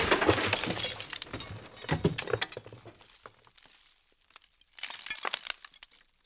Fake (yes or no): no